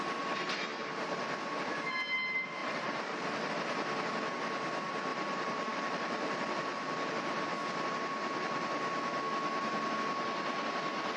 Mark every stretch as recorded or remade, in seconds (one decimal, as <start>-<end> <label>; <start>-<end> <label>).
0.0-2.6 recorded; 2.6-3.5 remade; 3.5-5.1 recorded; 5.1-7.4 remade; 7.4-11.2 recorded